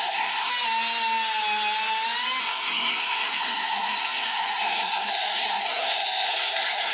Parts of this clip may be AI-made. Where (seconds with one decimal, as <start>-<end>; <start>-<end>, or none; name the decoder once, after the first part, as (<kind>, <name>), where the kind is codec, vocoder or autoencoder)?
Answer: 0.0-0.5 (codec, SNAC); 2.4-6.9